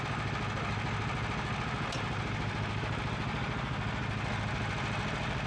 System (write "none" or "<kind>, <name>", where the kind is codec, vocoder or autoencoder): none